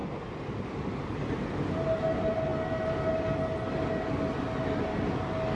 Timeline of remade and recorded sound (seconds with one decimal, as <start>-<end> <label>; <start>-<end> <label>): 0.0-5.6 recorded